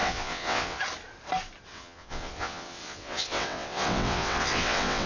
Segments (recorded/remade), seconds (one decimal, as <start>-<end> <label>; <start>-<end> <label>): 0.0-0.8 remade; 0.8-1.7 recorded; 1.7-5.1 remade